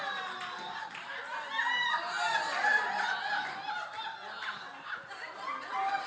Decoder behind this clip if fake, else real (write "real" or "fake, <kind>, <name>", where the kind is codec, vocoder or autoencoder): real